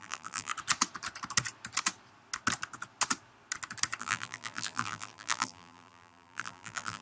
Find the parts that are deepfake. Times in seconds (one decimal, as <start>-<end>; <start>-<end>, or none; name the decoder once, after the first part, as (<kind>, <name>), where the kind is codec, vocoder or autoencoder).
0.0-0.5 (vocoder, BigVGAN v2); 4.0-7.0